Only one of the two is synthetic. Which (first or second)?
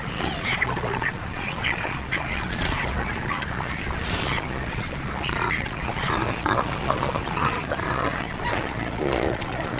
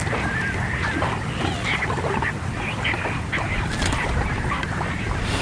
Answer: first